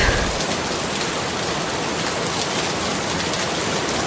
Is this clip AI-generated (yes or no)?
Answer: no